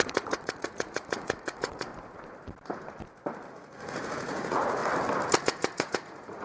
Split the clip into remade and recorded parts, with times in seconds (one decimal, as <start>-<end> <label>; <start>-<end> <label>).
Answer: 0.0-1.9 remade; 1.9-3.5 recorded; 3.5-4.8 remade; 4.8-5.4 recorded; 5.4-6.4 remade